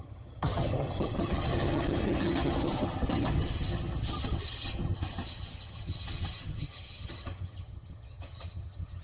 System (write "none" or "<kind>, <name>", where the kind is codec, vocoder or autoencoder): vocoder, HiFi-GAN